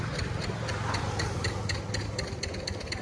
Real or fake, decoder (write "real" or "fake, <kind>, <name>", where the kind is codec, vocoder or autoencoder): real